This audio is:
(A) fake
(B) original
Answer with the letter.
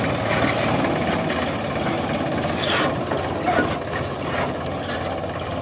B